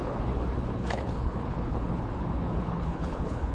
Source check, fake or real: fake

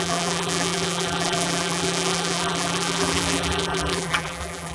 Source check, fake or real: fake